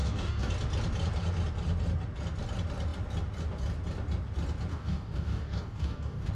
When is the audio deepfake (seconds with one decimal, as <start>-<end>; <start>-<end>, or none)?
0.0-0.5; 4.7-6.3

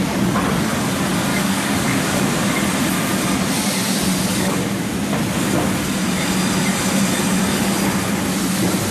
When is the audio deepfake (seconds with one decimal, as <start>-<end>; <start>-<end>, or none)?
1.3-2.3; 4.3-4.9

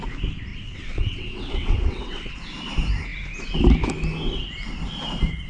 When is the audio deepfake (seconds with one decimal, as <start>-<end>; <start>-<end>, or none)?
0.5-2.3